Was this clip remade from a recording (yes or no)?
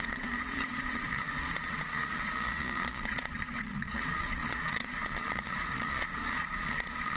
yes